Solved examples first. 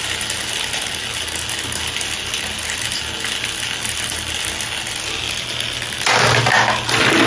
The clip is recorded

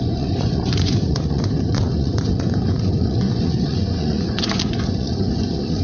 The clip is remade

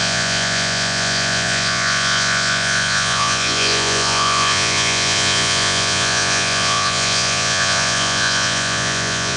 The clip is remade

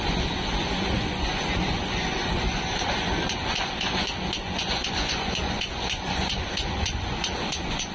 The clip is remade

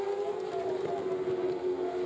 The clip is recorded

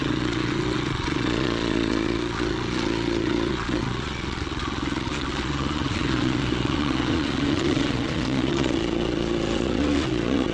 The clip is remade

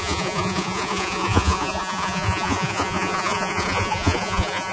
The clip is remade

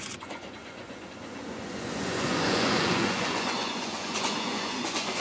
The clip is remade